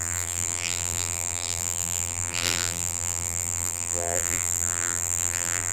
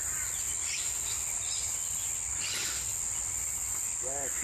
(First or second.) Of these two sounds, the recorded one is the second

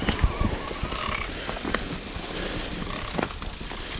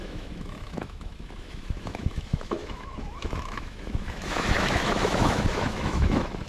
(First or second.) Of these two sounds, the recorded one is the first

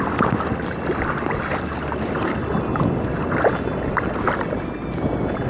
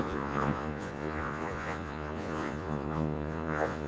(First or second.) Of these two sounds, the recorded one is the first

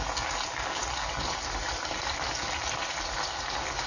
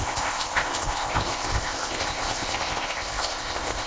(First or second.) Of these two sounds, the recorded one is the first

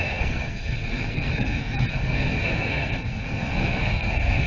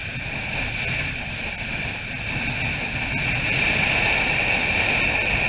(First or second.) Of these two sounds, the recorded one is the second